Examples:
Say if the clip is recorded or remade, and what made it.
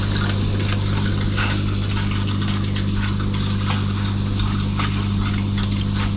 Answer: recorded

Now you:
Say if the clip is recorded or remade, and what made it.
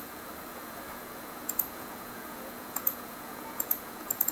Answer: remade, vocoder, Vocos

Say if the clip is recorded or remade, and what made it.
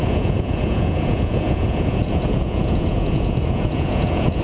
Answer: remade, vocoder, Vocos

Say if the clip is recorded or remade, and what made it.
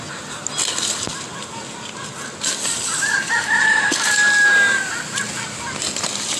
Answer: recorded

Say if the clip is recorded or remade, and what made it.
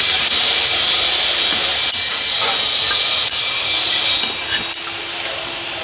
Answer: recorded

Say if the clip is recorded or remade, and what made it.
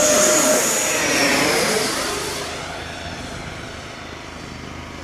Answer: recorded